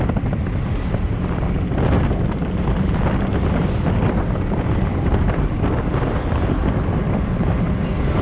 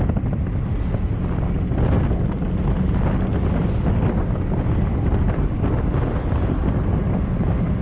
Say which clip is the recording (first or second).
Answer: second